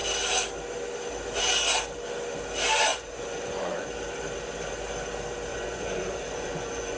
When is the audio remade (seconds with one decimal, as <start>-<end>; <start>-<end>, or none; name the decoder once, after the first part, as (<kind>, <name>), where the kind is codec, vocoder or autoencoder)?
2.9-3.9 (vocoder, Vocos); 5.5-7.0